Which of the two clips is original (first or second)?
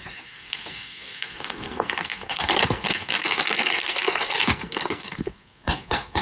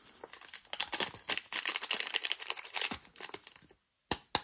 second